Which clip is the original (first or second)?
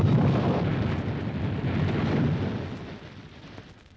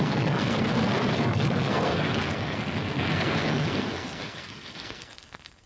first